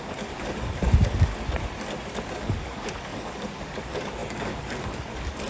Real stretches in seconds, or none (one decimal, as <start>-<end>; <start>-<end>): 1.3-2.3